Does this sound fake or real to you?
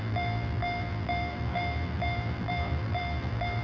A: fake